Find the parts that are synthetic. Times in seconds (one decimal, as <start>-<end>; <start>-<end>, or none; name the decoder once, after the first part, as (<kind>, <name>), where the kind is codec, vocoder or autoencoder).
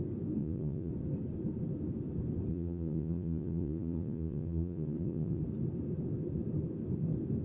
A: 0.4-0.9 (vocoder, Vocos); 2.5-5.4